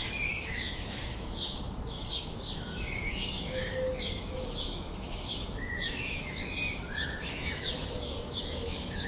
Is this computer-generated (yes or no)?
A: yes